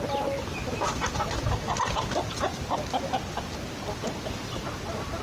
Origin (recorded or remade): recorded